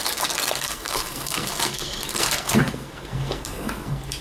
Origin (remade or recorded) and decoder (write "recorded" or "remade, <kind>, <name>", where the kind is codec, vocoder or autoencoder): remade, codec, SNAC